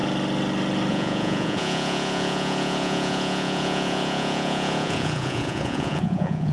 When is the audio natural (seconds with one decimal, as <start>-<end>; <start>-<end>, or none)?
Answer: 0.0-0.9